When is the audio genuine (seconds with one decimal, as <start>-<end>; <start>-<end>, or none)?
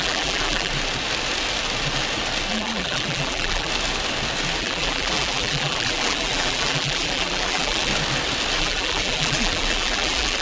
0.7-2.5; 3.7-4.6; 7.9-8.6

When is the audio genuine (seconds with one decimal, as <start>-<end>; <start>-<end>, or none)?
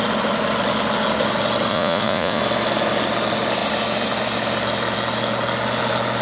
0.0-1.7; 2.4-6.2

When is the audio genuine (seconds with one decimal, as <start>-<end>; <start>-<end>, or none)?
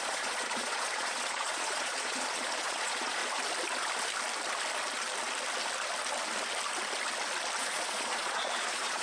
3.2-7.6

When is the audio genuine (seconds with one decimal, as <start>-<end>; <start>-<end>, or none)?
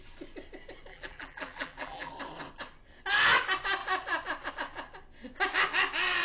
0.0-0.9; 2.1-6.2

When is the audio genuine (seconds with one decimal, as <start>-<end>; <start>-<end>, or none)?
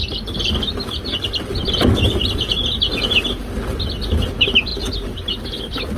0.0-4.7; 5.4-6.0